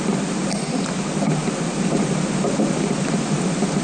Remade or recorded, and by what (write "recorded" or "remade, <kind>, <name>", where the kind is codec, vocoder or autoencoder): recorded